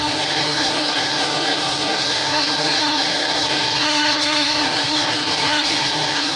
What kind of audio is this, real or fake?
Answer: fake